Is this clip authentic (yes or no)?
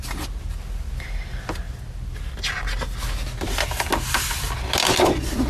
yes